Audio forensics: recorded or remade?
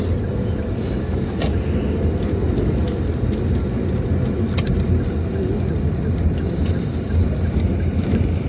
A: recorded